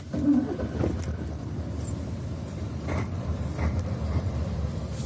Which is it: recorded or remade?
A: remade